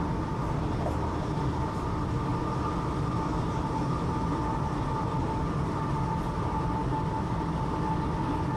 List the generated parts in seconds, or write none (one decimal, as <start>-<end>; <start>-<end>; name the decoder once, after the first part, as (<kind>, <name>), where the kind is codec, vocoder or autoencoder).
none